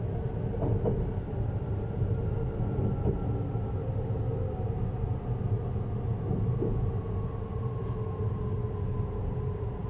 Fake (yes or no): no